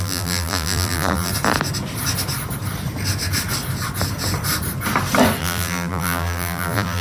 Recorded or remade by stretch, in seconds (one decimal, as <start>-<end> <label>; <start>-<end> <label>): 0.0-1.3 remade; 1.3-5.4 recorded; 5.4-7.0 remade